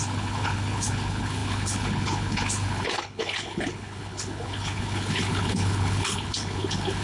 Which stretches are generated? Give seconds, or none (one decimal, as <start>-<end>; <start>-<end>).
0.0-7.0